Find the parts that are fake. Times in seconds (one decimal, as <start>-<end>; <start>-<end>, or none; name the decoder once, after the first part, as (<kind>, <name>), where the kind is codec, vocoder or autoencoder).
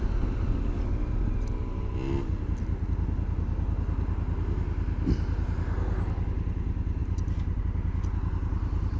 7.0-7.6 (vocoder, BigVGAN v2)